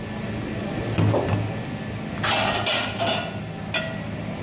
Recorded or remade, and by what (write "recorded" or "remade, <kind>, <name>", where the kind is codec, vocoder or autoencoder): recorded